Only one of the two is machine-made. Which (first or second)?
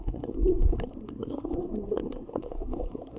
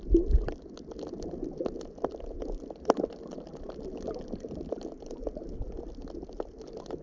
first